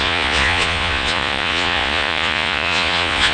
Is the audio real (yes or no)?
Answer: no